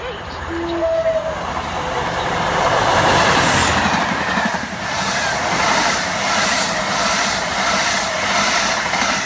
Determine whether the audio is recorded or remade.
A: recorded